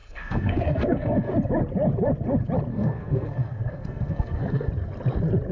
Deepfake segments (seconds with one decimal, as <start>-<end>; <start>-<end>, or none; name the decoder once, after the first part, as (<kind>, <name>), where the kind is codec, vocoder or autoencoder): 0.0-1.3 (codec, SNAC); 2.7-4.7